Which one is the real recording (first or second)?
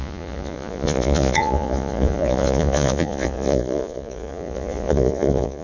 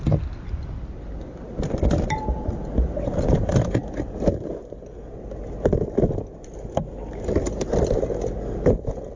second